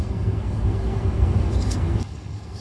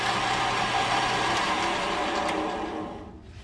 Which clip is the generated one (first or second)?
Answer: first